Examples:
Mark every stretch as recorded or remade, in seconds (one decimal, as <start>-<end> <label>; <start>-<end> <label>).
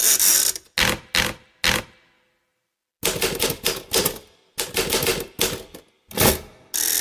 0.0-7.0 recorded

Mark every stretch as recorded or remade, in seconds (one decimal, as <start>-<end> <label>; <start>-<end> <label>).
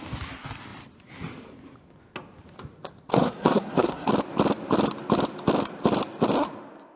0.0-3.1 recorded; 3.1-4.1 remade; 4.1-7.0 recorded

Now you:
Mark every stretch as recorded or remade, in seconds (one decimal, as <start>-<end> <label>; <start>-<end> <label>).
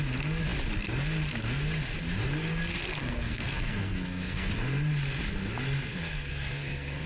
0.0-3.0 recorded; 3.0-4.5 remade; 4.5-5.9 recorded; 5.9-7.1 remade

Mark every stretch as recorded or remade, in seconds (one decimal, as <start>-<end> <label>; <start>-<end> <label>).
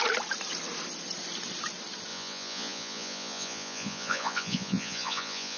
0.0-2.1 recorded; 2.1-5.6 remade